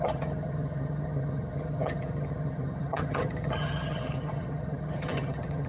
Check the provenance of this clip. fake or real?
fake